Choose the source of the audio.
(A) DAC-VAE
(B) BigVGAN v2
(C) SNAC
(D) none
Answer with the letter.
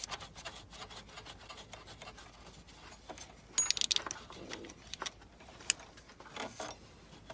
D